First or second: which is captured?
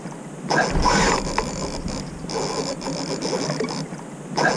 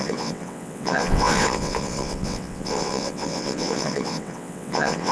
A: first